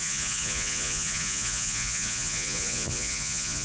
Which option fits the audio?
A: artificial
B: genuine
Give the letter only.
A